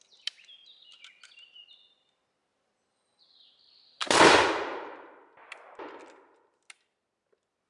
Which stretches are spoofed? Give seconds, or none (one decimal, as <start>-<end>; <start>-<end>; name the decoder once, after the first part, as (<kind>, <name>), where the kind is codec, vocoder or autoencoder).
none